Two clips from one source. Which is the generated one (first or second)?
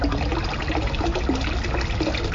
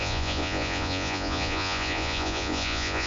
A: second